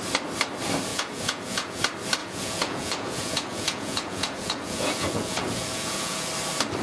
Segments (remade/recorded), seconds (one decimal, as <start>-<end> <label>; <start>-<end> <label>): 0.0-0.9 recorded; 0.9-1.8 remade; 1.8-2.2 recorded; 2.2-6.3 remade; 6.3-6.8 recorded